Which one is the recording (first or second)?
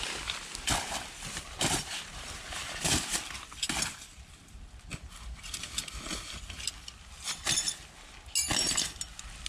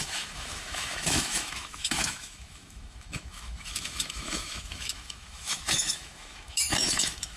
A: first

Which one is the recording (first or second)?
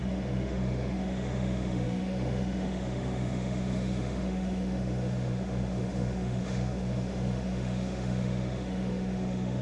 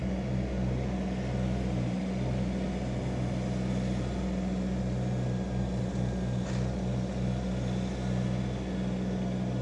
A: second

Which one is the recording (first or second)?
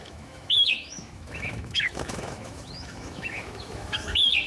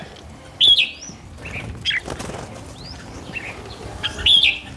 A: second